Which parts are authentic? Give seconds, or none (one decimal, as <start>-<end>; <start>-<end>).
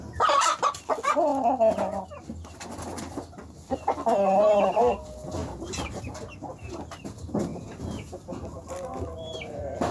0.0-9.9